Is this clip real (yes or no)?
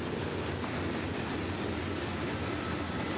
yes